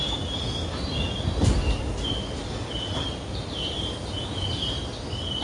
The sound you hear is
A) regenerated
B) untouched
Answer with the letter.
B